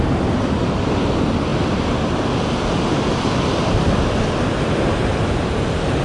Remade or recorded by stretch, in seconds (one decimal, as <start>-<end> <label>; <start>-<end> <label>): 0.0-6.0 recorded